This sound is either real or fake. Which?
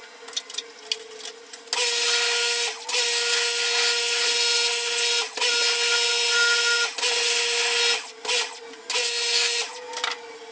real